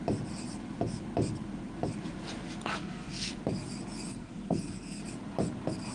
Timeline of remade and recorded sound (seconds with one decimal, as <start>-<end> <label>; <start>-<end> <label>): 0.0-2.8 recorded; 2.8-3.3 remade; 3.3-4.1 recorded; 4.1-5.0 remade; 5.0-5.9 recorded